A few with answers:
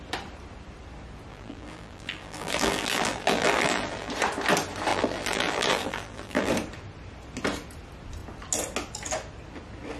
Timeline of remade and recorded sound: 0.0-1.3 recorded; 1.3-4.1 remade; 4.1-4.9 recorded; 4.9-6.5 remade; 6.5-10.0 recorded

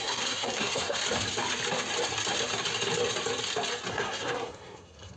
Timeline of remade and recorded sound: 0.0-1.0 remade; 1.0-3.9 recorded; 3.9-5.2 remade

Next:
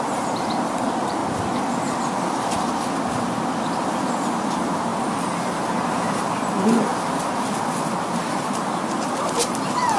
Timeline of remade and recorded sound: 0.0-1.2 remade; 1.2-4.2 recorded; 4.2-6.9 remade; 6.9-8.2 recorded; 8.2-10.0 remade